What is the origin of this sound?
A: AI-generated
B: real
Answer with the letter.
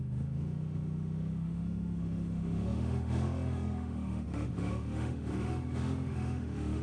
A